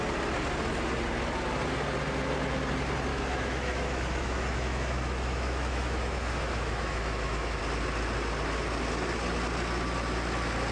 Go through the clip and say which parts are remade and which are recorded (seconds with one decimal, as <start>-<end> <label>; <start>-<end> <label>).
0.0-3.1 recorded; 3.1-7.6 remade; 7.6-10.7 recorded